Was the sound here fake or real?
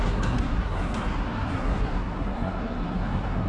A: fake